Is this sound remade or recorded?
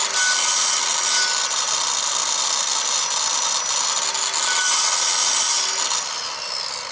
recorded